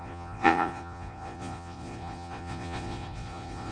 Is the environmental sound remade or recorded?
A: remade